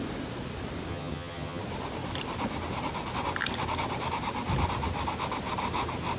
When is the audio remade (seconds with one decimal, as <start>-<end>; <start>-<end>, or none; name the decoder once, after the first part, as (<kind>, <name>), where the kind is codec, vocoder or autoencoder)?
0.9-1.6 (vocoder, HiFi-GAN)